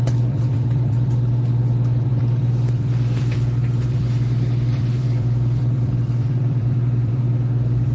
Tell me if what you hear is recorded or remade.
remade